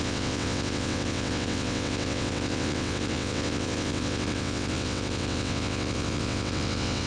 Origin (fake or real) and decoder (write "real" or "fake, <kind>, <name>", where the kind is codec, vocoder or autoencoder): fake, vocoder, WaveNeXt